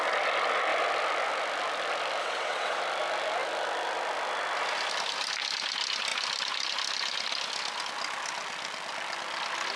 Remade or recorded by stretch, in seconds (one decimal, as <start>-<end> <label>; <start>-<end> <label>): 0.0-2.2 recorded; 2.2-2.8 remade; 2.8-9.8 recorded